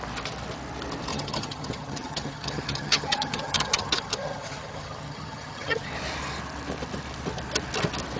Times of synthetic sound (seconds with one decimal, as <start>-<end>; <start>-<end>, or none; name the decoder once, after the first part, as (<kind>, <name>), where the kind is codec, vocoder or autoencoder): 1.1-5.9 (vocoder, HiFi-GAN)